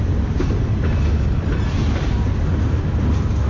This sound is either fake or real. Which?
real